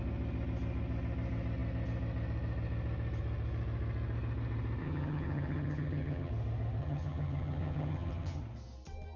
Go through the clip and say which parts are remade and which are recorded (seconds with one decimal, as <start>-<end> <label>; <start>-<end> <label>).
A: 0.0-4.8 recorded; 4.8-6.3 remade; 6.3-6.8 recorded; 6.8-8.4 remade; 8.4-9.2 recorded